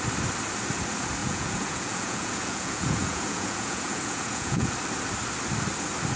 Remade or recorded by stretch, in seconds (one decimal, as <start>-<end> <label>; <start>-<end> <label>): 0.0-1.2 recorded; 1.2-4.7 remade; 4.7-6.2 recorded